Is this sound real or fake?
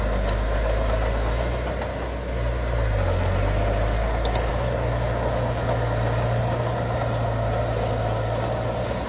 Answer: real